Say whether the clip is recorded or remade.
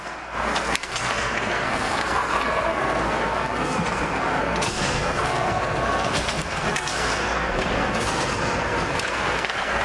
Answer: remade